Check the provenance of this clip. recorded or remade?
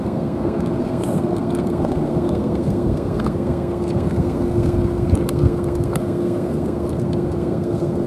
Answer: remade